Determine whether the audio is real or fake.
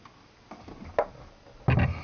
real